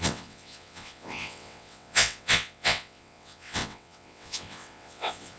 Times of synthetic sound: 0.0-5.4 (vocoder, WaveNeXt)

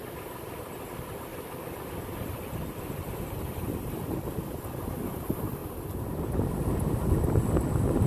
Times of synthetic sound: 1.3-3.8 (vocoder, BigVGAN v2); 5.6-7.4

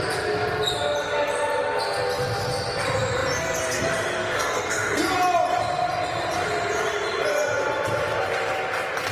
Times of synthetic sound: 4.2-5.0 (codec, SNAC)

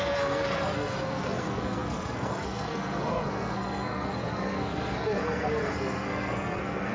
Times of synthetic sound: 0.0-6.9 (codec, SNAC)

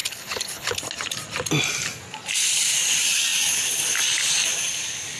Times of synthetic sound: 0.0-0.8 (codec, HILCodec)

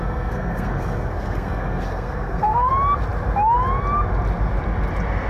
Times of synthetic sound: 0.0-2.7 (codec, SNAC)

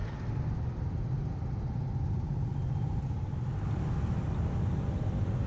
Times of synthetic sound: none